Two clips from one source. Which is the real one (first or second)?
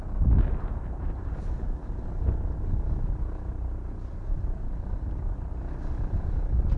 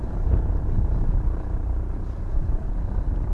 first